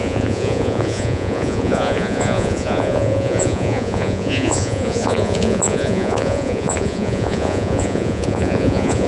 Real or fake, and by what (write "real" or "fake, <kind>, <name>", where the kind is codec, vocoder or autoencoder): fake, vocoder, Vocos